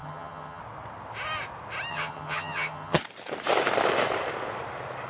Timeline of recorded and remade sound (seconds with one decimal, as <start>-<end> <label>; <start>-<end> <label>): 0.0-0.6 remade; 0.6-1.9 recorded; 1.9-3.0 remade; 3.0-5.1 recorded